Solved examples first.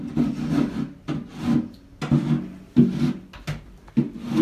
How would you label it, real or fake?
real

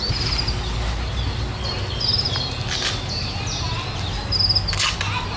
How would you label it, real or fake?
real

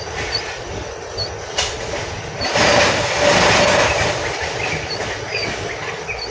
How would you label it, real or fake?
real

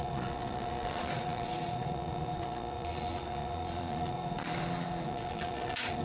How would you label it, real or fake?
fake